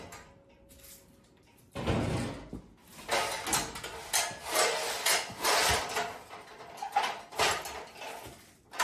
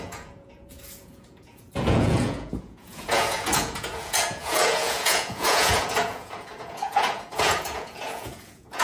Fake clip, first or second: second